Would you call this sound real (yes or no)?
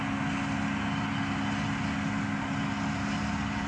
yes